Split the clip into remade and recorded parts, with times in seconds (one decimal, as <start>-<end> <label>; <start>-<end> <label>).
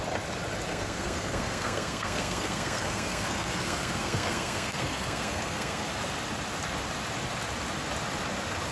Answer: 0.0-0.7 recorded; 0.7-5.9 remade; 5.9-8.7 recorded